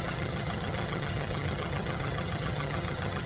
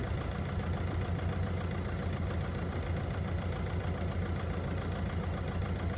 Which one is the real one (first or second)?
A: second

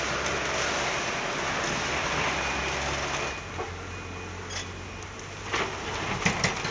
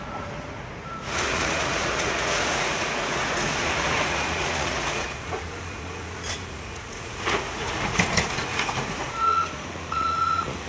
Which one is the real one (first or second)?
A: first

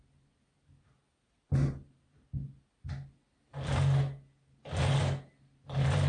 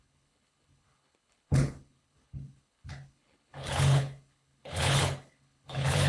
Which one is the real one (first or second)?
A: first